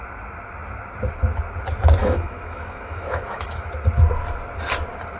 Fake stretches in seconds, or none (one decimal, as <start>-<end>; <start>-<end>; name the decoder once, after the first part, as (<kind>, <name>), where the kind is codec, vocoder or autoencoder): 2.0-3.7 (autoencoder, DAC-VAE)

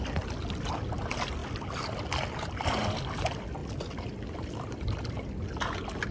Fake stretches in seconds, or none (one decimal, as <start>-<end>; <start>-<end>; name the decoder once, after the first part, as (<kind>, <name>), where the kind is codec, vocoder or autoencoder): none

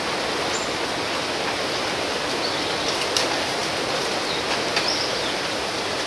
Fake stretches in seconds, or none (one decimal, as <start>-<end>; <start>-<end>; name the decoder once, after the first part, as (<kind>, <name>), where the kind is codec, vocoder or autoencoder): none

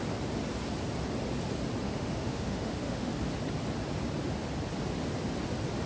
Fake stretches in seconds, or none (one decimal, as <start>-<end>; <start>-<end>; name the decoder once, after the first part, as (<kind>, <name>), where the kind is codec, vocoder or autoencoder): 1.8-3.1 (autoencoder, DAC-VAE)

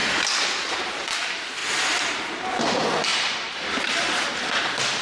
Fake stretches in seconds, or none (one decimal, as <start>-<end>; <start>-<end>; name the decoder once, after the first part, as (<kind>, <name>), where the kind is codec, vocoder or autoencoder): 3.1-4.6 (vocoder, BigVGAN v2)